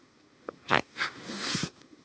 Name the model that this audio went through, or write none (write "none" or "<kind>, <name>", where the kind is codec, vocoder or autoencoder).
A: codec, SNAC